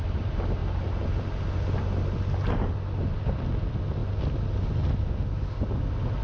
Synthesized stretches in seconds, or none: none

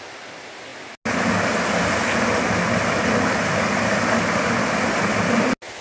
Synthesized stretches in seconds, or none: none